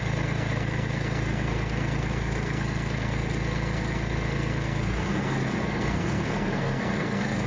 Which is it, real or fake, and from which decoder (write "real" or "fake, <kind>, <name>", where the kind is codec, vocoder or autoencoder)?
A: fake, codec, SNAC